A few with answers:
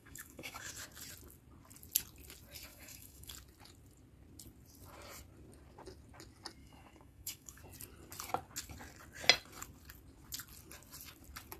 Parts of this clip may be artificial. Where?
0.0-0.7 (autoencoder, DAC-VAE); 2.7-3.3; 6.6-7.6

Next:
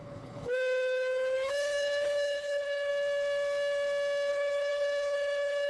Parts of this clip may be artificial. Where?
0.0-2.9 (codec, HILCodec); 4.3-5.7